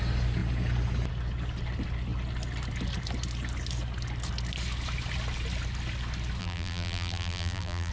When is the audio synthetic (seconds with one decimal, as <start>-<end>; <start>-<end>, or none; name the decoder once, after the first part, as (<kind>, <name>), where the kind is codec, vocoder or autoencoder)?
6.4-7.9 (vocoder, BigVGAN v2)